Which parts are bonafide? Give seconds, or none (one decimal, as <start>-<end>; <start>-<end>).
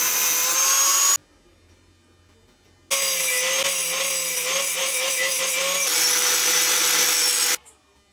0.0-4.8; 5.4-8.1